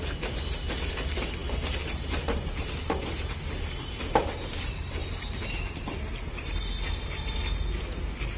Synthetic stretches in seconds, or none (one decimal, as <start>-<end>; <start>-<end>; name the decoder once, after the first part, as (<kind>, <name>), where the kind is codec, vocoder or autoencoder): none